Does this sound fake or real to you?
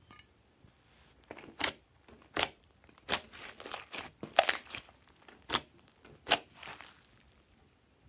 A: fake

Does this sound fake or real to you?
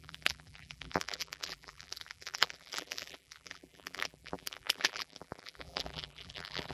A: fake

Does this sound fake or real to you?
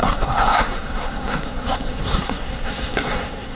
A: fake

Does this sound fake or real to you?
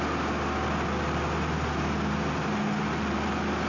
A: real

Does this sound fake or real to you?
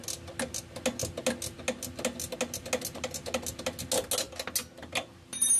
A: real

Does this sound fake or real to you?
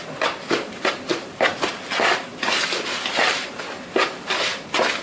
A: real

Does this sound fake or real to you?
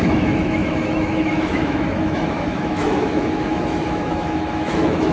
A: fake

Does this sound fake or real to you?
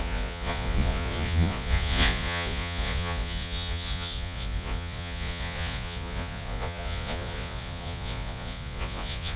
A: fake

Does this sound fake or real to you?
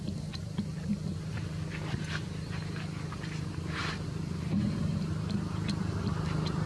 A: fake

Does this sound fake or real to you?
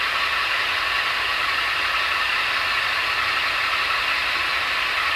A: real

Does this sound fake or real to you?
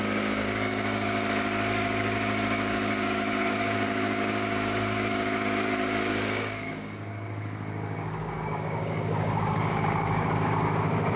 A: fake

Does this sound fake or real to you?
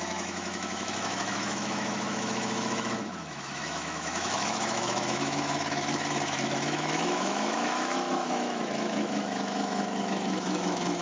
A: fake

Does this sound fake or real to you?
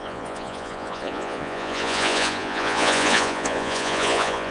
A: fake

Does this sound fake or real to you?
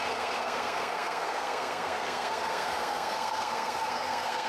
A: fake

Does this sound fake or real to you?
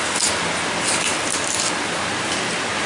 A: real